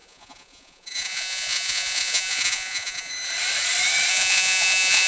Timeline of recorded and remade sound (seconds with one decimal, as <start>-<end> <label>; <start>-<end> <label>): 0.0-3.1 remade; 3.1-4.1 recorded; 4.1-5.1 remade